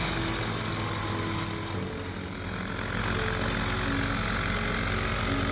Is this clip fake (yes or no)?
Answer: no